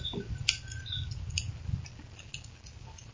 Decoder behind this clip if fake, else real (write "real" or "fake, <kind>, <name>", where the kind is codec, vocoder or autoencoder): real